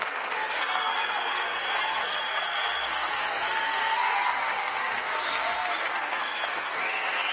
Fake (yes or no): yes